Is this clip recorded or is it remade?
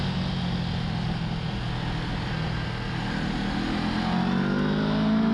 recorded